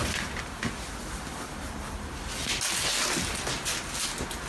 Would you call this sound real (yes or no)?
yes